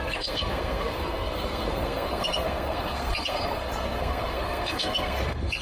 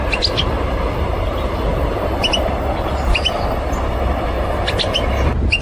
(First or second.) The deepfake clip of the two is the first